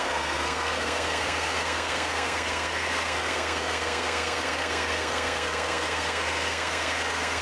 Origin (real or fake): fake